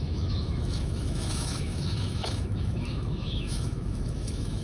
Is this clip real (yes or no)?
no